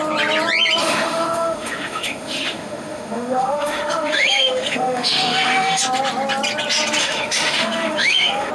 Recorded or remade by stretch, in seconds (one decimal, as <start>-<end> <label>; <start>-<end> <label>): 0.0-0.8 recorded; 0.8-5.8 remade; 5.8-7.0 recorded; 7.0-8.5 remade